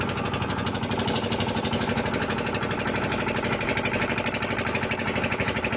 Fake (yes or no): yes